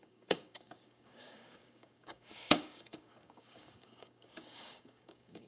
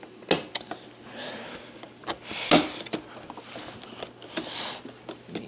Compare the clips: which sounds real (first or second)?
second